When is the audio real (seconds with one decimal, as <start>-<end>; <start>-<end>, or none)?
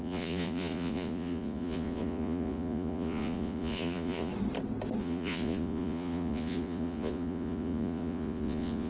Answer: 4.3-5.0